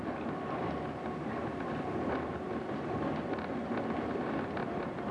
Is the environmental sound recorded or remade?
remade